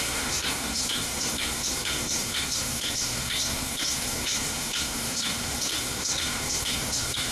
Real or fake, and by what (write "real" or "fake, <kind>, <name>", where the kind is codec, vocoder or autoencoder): fake, codec, SNAC